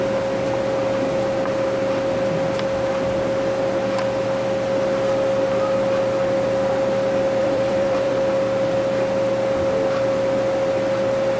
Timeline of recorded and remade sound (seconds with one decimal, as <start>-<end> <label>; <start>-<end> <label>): 0.0-7.4 recorded; 7.4-8.1 remade; 8.1-11.4 recorded